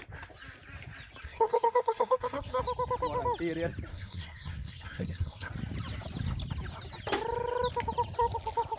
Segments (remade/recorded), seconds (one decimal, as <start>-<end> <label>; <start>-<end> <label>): 0.0-1.2 recorded; 1.2-2.6 remade; 2.6-3.9 recorded; 3.9-5.5 remade; 5.5-8.8 recorded